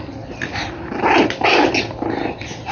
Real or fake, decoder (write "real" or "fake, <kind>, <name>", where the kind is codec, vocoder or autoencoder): real